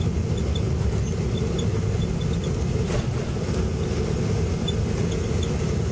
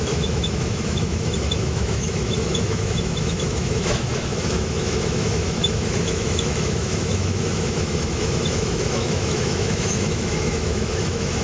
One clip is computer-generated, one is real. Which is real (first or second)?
first